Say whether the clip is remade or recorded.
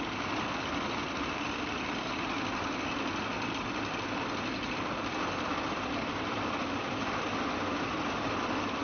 recorded